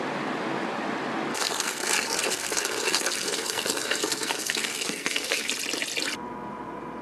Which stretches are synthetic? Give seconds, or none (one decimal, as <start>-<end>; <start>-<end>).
1.3-5.5